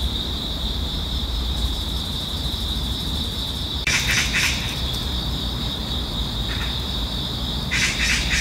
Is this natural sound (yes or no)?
no